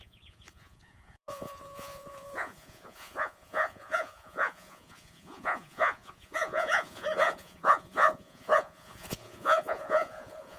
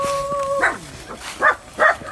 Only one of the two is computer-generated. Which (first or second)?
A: first